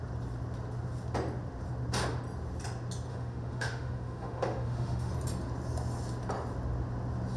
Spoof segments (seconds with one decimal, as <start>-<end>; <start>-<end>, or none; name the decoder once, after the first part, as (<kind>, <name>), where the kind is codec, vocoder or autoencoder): 3.1-5.1 (autoencoder, DAC-VAE)